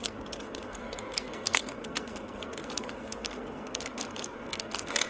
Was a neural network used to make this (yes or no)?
yes